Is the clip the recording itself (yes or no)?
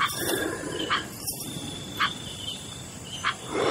no